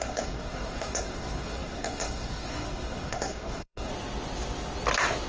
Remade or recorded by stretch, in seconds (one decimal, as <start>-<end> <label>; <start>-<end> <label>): 0.0-3.9 remade; 3.9-5.3 recorded